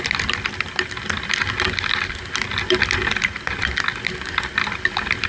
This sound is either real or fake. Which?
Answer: real